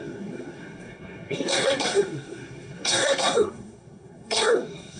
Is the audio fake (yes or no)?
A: yes